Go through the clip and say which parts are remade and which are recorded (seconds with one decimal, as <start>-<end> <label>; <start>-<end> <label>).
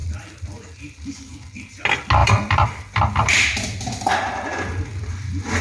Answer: 0.0-0.9 remade; 0.9-2.2 recorded; 2.2-4.1 remade; 4.1-5.6 recorded